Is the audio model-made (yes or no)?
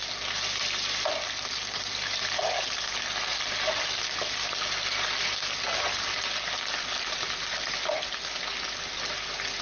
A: no